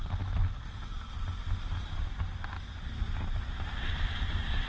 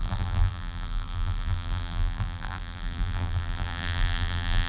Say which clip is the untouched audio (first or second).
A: first